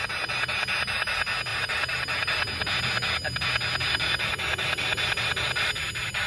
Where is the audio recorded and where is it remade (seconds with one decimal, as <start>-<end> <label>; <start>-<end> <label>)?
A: 0.0-1.5 recorded; 1.5-2.8 remade; 2.8-6.3 recorded